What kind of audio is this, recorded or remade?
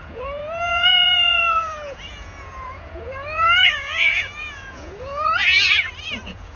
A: remade